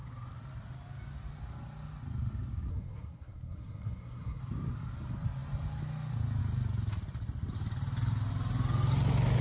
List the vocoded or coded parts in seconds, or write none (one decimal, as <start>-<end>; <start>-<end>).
2.7-4.4